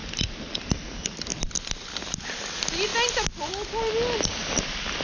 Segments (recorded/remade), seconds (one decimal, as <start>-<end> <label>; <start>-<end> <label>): 0.0-5.0 recorded